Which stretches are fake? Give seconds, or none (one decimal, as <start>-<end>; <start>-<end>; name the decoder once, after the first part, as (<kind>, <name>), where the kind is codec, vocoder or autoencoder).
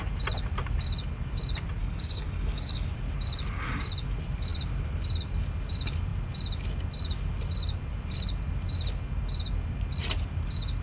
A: 1.8-2.9 (codec, DAC)